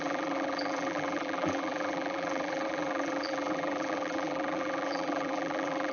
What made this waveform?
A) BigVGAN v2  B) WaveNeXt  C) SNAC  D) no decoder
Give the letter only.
A